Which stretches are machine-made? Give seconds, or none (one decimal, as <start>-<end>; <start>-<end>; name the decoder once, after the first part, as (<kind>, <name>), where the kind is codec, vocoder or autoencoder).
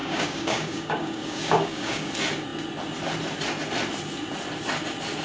0.0-2.1 (codec, DAC)